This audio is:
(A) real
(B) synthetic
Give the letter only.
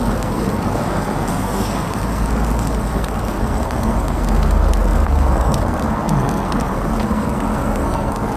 B